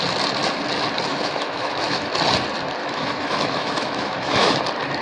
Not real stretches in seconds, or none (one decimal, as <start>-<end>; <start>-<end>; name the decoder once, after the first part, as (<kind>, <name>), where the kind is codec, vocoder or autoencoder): 1.1-2.1 (autoencoder, DAC-VAE); 2.8-4.6